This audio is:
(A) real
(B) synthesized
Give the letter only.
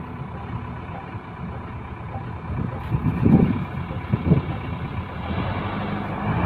A